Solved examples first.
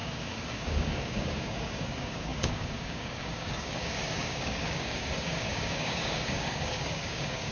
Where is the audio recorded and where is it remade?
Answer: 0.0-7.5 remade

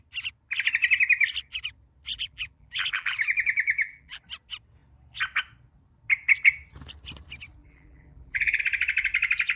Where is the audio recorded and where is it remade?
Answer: 0.0-2.1 recorded; 2.1-4.2 remade; 4.2-7.6 recorded; 7.6-8.6 remade; 8.6-9.6 recorded

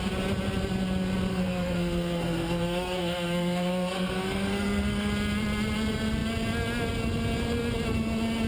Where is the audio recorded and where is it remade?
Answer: 0.0-1.3 recorded; 1.3-5.1 remade; 5.1-8.5 recorded

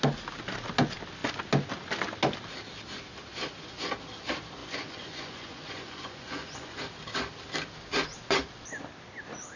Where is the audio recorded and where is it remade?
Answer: 0.0-4.6 recorded; 4.6-6.8 remade; 6.8-9.6 recorded

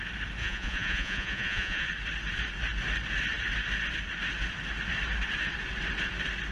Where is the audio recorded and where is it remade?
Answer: 0.0-0.4 recorded; 0.4-1.9 remade; 1.9-6.5 recorded